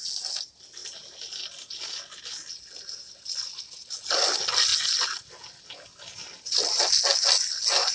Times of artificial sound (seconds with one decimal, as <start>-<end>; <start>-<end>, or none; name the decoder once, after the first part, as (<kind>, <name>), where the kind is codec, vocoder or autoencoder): none